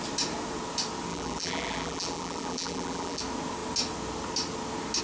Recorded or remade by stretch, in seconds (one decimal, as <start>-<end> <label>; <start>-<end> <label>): 0.0-1.1 recorded; 1.1-3.2 remade; 3.2-5.0 recorded